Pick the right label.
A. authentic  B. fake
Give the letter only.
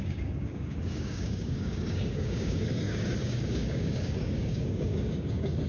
B